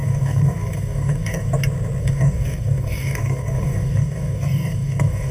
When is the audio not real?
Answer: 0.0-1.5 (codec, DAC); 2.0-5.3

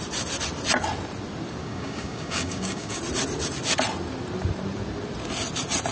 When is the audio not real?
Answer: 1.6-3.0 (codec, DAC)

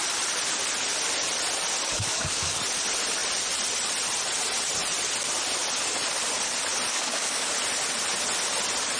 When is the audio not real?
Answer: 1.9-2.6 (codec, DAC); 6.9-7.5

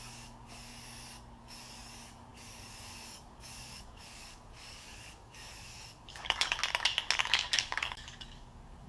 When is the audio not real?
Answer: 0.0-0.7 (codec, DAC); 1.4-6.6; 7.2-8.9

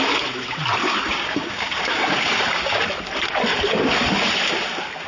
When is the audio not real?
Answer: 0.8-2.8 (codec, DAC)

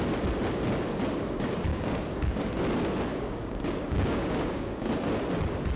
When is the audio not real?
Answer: 1.7-2.5 (codec, DAC); 3.1-4.9

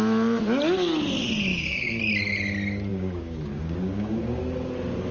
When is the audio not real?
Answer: 1.5-2.0 (codec, DAC); 2.9-4.4